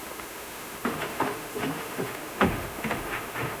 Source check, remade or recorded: remade